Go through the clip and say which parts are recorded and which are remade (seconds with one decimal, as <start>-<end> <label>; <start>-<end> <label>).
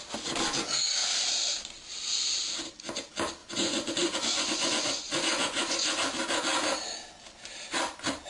0.0-3.4 recorded; 3.4-5.9 remade; 5.9-8.3 recorded